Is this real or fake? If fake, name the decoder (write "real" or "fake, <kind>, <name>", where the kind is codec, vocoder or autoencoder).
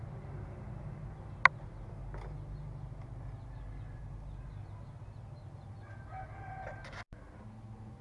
real